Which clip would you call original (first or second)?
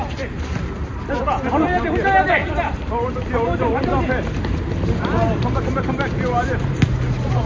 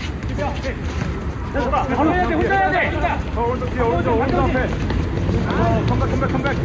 second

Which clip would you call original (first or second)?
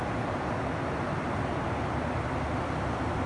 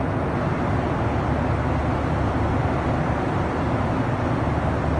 second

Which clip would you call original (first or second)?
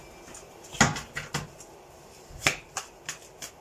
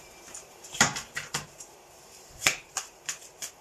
first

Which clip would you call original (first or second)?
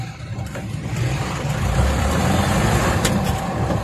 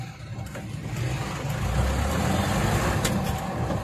second